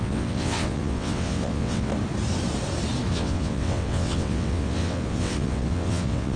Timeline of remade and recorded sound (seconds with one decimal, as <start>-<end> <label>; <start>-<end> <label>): 0.0-1.9 remade; 1.9-3.1 recorded; 3.1-6.4 remade